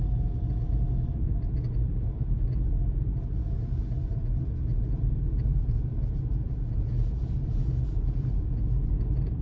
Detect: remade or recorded remade